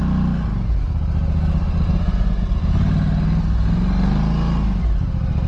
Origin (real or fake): real